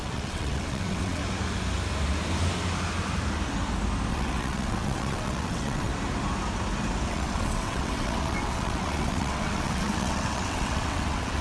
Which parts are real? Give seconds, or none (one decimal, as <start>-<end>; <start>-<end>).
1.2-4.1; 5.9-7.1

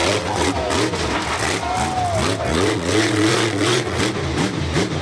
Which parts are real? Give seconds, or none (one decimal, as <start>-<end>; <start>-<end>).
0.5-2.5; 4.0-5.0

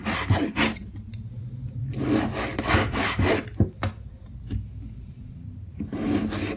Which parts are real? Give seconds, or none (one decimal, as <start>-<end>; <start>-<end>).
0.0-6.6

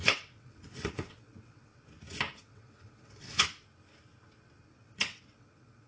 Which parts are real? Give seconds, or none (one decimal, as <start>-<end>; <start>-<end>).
1.7-2.4; 3.4-4.7

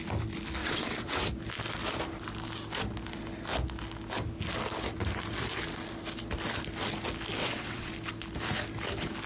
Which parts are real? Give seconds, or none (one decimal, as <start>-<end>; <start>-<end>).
0.0-0.6; 1.3-7.4; 7.9-9.3

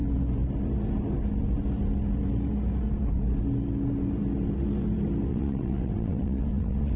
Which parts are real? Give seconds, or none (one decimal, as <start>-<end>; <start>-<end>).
0.0-5.3

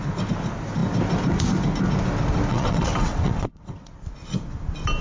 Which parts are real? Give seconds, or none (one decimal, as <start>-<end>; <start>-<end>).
0.0-2.5; 3.9-5.0

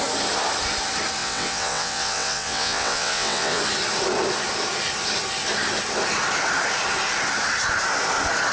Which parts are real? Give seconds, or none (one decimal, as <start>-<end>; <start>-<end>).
0.0-1.2; 3.6-8.5